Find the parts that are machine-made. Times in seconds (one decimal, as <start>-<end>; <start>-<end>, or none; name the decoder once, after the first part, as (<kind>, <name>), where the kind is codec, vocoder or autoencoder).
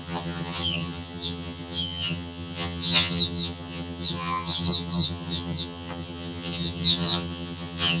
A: 0.0-8.0 (vocoder, HiFi-GAN)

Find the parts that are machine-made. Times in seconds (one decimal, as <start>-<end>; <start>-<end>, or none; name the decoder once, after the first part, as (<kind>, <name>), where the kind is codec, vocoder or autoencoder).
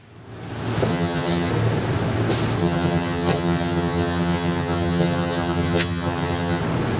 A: 0.9-1.5 (vocoder, HiFi-GAN); 2.6-6.6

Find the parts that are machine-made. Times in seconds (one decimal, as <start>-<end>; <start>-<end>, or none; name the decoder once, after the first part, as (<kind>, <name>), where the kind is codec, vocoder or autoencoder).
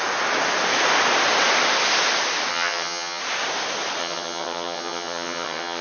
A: 2.5-3.2 (vocoder, HiFi-GAN); 4.0-5.8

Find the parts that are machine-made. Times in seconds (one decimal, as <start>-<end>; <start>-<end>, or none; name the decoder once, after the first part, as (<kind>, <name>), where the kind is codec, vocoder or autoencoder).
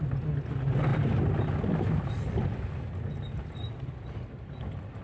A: none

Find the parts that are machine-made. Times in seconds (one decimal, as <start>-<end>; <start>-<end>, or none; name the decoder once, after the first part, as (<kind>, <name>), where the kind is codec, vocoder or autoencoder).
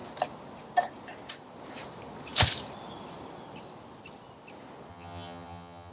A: 4.9-5.9 (vocoder, HiFi-GAN)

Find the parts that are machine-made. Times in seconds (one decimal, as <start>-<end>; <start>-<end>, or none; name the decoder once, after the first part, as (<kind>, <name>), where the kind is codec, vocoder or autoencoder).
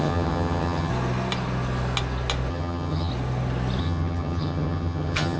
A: 0.0-0.9 (vocoder, HiFi-GAN); 2.5-3.1; 3.8-5.4